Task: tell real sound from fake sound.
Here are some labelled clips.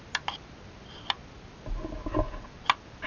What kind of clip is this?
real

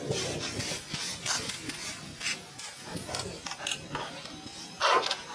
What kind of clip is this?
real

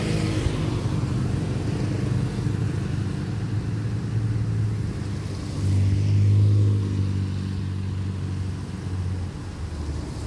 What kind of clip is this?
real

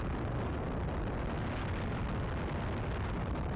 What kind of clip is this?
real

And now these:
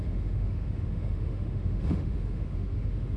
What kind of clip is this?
fake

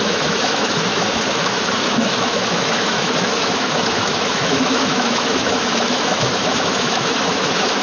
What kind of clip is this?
fake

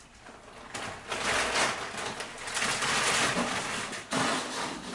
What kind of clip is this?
real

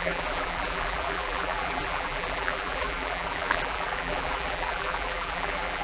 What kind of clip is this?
fake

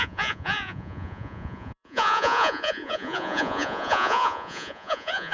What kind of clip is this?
fake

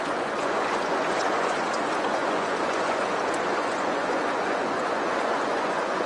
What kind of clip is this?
fake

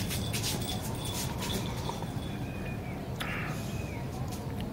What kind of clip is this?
real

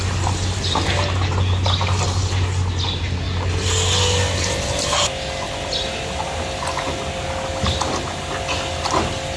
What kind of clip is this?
real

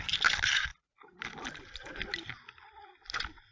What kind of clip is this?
real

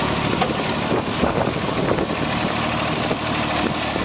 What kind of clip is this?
real